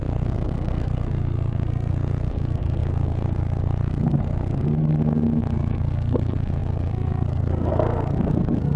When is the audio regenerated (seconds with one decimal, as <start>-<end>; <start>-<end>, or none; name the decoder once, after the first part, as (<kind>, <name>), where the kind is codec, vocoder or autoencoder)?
0.0-8.8 (codec, SNAC)